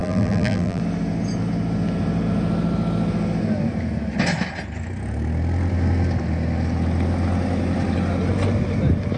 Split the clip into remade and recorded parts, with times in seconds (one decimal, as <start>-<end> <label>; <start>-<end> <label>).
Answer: 0.0-0.8 remade; 0.8-9.2 recorded